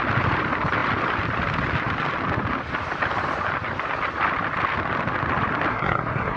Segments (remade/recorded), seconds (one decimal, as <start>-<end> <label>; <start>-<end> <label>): 0.0-5.7 recorded; 5.7-6.4 remade